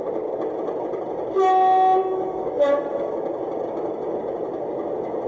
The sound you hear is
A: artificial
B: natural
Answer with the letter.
B